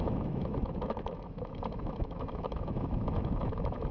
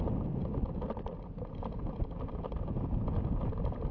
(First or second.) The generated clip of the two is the first